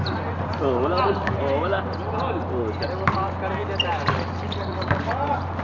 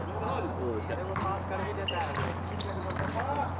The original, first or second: second